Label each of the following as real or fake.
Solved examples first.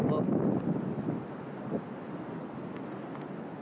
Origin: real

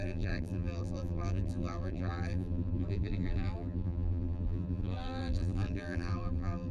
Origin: fake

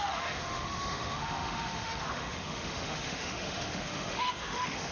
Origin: fake